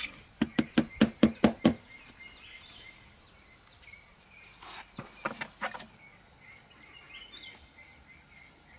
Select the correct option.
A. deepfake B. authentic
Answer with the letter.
B